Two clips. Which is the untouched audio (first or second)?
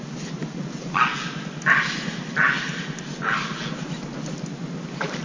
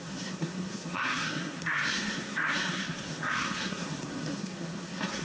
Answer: first